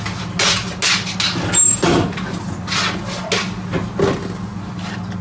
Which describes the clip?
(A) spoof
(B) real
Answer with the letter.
B